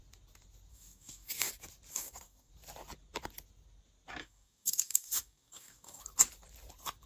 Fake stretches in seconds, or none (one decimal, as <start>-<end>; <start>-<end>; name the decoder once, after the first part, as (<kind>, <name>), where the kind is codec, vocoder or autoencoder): 0.7-1.5 (codec, DAC); 1.9-2.5; 4.2-6.0